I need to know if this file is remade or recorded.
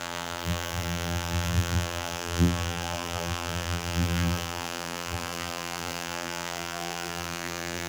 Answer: remade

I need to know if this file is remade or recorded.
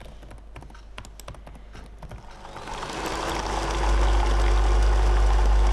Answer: recorded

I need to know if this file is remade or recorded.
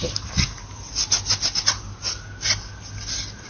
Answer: recorded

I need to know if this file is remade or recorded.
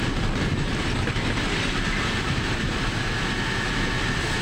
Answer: recorded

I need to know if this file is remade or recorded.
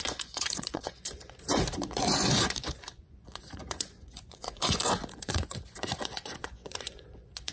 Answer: remade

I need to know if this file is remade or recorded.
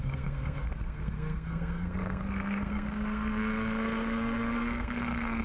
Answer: remade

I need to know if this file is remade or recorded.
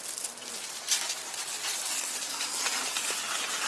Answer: recorded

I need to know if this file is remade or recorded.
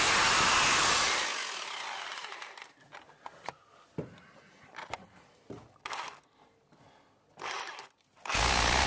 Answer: recorded